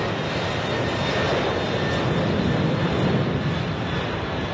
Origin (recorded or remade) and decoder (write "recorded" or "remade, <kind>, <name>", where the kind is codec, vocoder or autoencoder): recorded